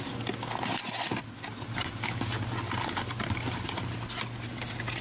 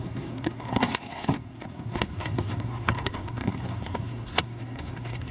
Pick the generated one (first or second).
second